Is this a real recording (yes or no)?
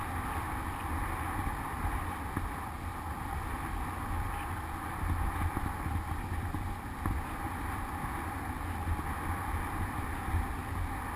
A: yes